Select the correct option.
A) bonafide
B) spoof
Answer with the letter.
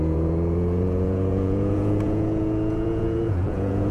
B